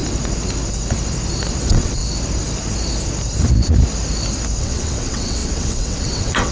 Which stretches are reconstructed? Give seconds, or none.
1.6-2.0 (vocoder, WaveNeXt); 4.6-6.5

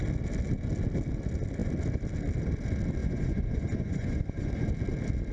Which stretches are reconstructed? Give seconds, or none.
3.0-4.7 (vocoder, Vocos)

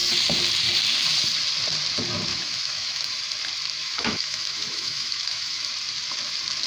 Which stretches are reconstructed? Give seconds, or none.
2.3-3.2 (autoencoder, DAC-VAE); 3.8-5.7

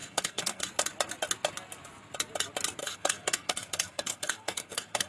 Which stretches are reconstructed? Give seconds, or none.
0.0-0.6 (codec, SNAC); 2.8-5.1

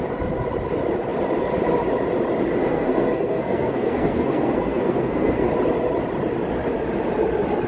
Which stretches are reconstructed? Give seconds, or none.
2.6-5.5 (codec, SNAC)